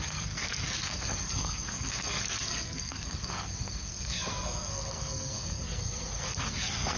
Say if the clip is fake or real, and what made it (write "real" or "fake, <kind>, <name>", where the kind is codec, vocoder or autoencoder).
fake, codec, SNAC